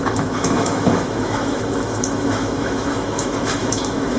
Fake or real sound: fake